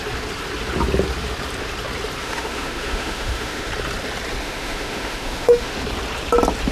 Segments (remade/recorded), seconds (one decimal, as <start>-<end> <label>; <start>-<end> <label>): 0.0-2.2 recorded; 2.2-3.7 remade; 3.7-4.4 recorded; 4.4-5.7 remade; 5.7-6.7 recorded

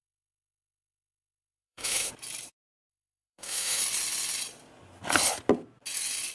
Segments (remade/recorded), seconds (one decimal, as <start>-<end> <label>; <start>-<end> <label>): 0.0-2.1 remade; 2.1-2.9 recorded; 2.9-3.8 remade; 3.8-6.3 recorded

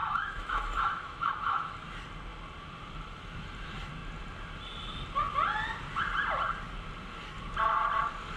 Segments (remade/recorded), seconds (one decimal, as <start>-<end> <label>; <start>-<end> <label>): 0.0-1.7 remade; 1.7-8.4 recorded

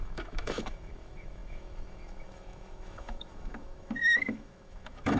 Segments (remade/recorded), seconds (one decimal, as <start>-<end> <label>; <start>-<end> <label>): 0.0-5.2 remade

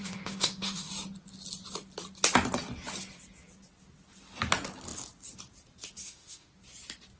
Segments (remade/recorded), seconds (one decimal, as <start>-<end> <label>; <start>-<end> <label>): 0.0-0.9 remade; 0.9-6.0 recorded; 6.0-6.5 remade; 6.5-7.2 recorded

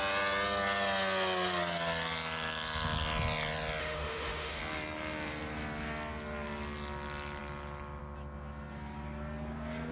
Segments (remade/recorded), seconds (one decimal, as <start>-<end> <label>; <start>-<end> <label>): 0.0-3.8 recorded; 3.8-4.6 remade; 4.6-9.9 recorded